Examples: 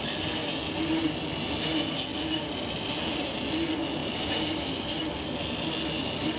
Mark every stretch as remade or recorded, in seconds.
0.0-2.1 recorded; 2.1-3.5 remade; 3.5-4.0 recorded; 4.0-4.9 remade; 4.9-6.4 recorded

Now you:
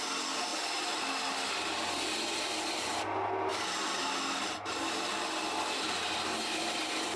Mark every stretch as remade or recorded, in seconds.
0.0-7.2 recorded

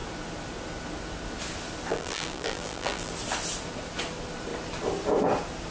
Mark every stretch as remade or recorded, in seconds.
0.0-1.9 recorded; 1.9-3.1 remade; 3.1-5.7 recorded